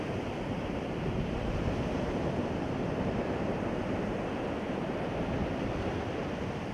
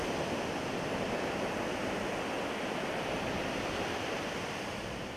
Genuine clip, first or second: second